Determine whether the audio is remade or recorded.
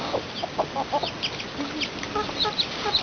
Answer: recorded